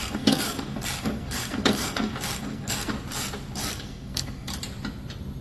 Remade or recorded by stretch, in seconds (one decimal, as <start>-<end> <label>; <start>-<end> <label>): 0.0-2.9 remade; 2.9-3.6 recorded; 3.6-4.5 remade; 4.5-5.4 recorded